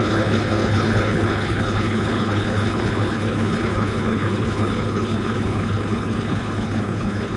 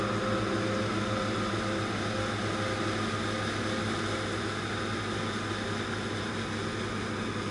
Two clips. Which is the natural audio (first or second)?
second